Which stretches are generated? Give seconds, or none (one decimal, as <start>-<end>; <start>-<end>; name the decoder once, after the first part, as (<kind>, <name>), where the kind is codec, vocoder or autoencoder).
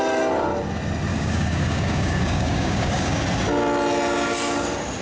1.1-3.2 (codec, DAC)